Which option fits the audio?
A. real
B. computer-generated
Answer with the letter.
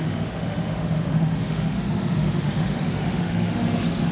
B